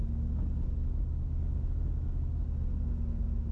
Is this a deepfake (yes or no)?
no